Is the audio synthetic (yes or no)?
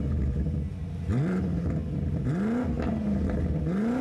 no